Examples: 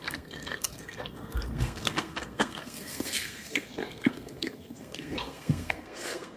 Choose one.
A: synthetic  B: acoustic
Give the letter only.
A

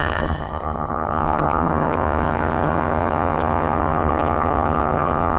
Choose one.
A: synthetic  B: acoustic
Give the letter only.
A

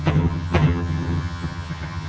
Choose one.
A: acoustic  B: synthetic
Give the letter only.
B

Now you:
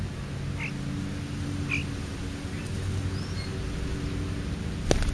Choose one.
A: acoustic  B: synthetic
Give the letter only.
A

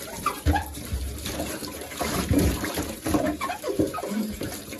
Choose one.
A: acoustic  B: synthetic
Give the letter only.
B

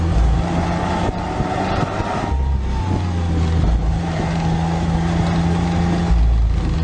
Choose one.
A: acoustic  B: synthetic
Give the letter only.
A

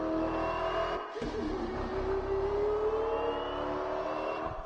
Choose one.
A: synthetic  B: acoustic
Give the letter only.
B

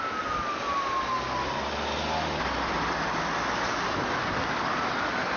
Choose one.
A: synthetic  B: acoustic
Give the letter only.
B